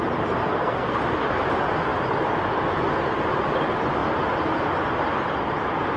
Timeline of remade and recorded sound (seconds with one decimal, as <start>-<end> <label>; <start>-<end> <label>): 0.0-0.4 recorded; 0.4-1.0 remade; 1.0-6.0 recorded